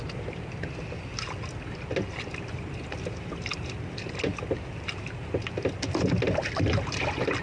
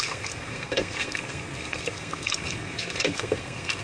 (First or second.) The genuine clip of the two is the first